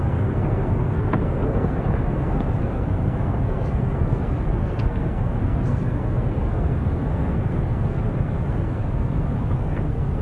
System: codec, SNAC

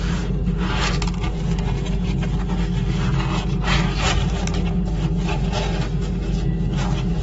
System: none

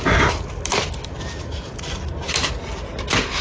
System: none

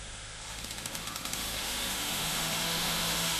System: autoencoder, DAC-VAE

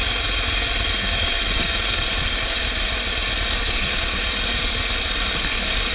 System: none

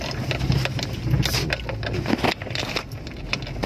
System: none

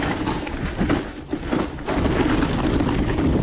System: none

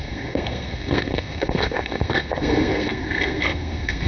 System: codec, SNAC